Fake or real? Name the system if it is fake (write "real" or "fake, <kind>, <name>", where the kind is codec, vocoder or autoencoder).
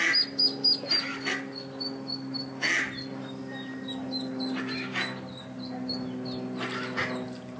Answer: real